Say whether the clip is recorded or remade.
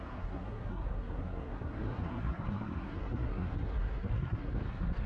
remade